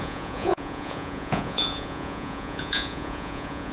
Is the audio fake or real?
fake